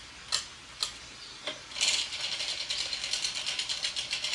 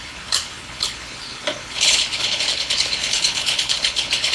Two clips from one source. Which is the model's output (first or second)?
second